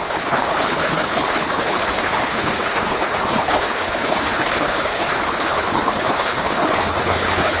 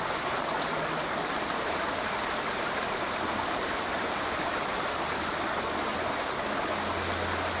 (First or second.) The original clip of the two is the second